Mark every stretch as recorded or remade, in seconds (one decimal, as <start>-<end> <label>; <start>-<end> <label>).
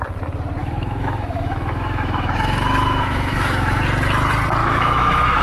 0.0-0.6 recorded; 0.6-3.8 remade; 3.8-4.6 recorded; 4.6-5.4 remade